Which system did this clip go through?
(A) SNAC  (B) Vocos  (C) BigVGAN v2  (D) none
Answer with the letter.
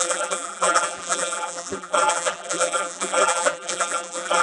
C